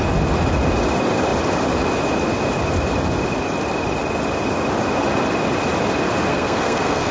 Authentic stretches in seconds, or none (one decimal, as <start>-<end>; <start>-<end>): 0.0-6.3